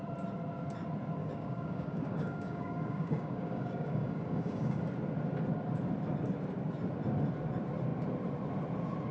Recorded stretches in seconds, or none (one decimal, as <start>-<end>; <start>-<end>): 0.0-1.2; 4.8-9.1